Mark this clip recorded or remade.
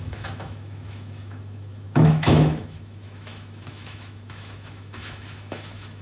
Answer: remade